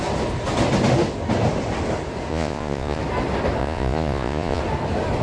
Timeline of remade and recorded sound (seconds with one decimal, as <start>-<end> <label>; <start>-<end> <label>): 0.0-2.3 recorded; 2.3-3.0 remade; 3.0-3.6 recorded; 3.6-4.6 remade; 4.6-5.2 recorded